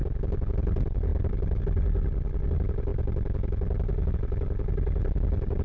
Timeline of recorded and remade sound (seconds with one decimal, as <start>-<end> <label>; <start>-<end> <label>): 0.0-5.6 recorded